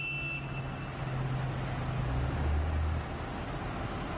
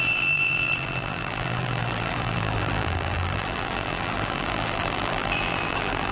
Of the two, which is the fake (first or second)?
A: second